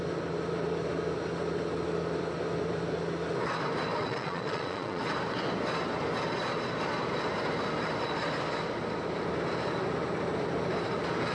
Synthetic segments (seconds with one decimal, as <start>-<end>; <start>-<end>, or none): 4.0-5.0